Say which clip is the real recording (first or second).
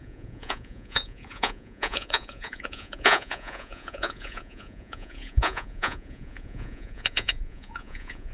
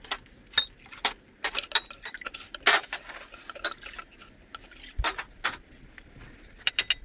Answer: second